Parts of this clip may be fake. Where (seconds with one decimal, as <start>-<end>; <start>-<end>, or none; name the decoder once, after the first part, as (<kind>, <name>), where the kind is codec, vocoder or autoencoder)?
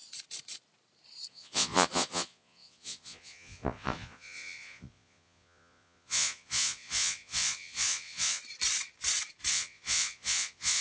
1.3-8.4 (vocoder, Vocos); 9.5-10.8